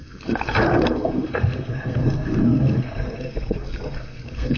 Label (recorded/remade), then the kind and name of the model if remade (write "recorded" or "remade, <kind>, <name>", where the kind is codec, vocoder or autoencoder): remade, codec, SNAC